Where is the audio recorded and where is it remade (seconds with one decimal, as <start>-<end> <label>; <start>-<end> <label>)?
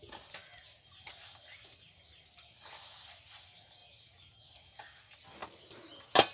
0.0-6.3 recorded